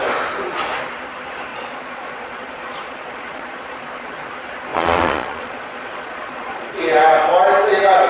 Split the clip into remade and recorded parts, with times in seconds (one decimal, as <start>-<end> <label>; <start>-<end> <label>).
0.0-1.5 recorded; 1.5-4.3 remade; 4.3-4.7 recorded; 4.7-6.8 remade; 6.8-8.1 recorded